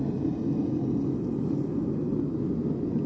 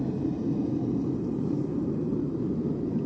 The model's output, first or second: second